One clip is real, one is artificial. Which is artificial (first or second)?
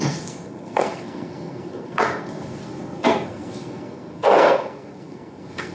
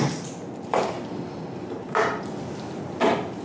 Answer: first